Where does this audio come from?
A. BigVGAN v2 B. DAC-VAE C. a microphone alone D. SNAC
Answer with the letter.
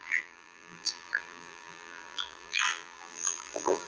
A